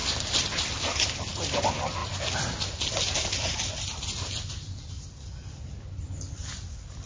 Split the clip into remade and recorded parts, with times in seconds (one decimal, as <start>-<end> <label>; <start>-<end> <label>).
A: 0.0-7.1 recorded